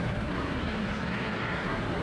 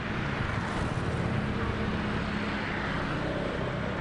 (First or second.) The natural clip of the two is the second